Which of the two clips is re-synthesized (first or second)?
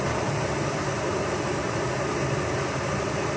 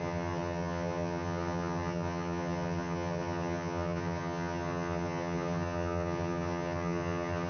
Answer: second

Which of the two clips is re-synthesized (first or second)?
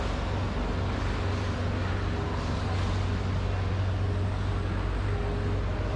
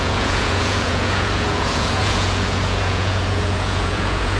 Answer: second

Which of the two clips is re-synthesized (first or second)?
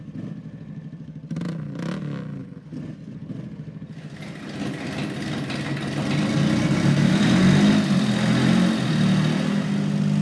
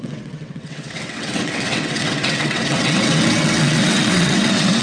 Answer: second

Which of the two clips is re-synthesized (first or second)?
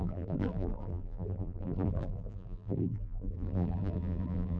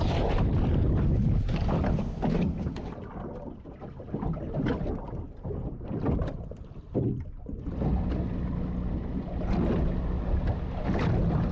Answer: first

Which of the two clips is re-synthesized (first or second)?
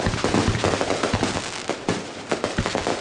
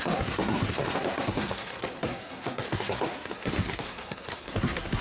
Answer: second